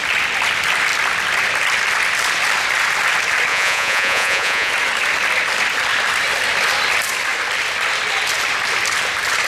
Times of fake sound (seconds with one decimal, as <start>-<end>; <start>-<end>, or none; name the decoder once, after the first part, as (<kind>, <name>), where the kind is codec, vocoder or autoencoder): 3.5-4.7 (vocoder, Vocos)

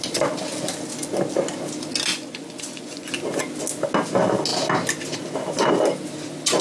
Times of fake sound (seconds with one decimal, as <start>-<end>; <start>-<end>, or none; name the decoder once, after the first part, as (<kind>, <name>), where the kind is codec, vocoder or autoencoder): 2.1-3.1 (vocoder, Vocos)

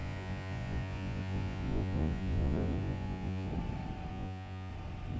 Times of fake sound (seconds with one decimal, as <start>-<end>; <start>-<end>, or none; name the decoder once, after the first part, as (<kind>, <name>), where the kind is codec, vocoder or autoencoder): 0.0-3.5 (vocoder, Vocos); 4.1-4.7

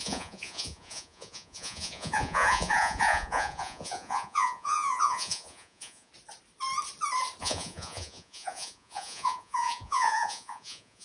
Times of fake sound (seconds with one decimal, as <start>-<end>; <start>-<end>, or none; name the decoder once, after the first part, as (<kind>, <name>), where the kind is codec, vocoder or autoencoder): 0.0-6.1 (vocoder, Vocos); 7.4-11.0